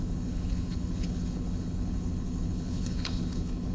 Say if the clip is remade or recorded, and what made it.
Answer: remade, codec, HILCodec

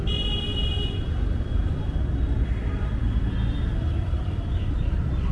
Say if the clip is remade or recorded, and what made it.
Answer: recorded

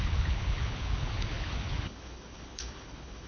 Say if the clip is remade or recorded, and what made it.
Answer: remade, codec, HILCodec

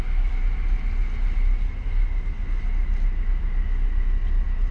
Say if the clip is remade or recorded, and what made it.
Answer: recorded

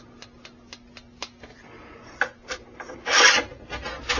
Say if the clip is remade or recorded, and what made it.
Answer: recorded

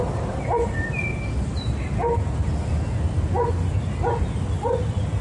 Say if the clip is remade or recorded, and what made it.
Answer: recorded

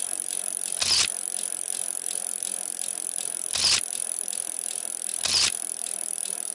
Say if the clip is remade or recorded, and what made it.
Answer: recorded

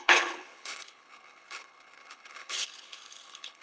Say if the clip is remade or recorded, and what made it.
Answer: remade, codec, HILCodec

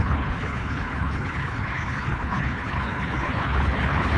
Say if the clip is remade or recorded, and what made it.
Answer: remade, codec, HILCodec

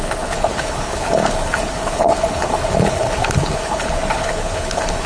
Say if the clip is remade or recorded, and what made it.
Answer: remade, codec, HILCodec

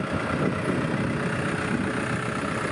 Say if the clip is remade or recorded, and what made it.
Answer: recorded